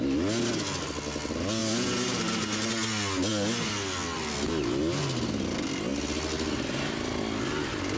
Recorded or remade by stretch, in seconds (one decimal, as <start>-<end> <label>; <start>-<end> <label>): 0.0-8.0 recorded